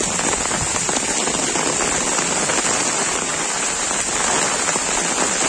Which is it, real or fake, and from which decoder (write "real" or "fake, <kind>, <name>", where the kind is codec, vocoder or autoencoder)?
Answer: real